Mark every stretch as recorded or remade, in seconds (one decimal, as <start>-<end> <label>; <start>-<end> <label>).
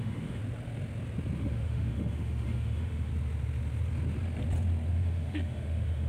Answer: 0.0-0.4 remade; 0.4-1.4 recorded; 1.4-3.1 remade; 3.1-4.9 recorded; 4.9-6.1 remade